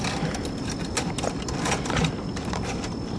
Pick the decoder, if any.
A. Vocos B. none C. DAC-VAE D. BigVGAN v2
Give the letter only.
B